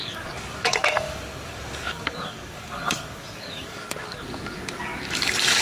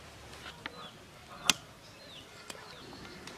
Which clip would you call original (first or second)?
second